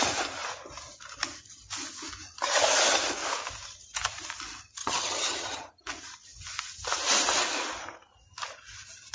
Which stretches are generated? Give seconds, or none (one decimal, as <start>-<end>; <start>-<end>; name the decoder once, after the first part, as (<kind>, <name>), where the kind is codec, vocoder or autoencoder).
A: 4.8-5.7 (vocoder, HiFi-GAN)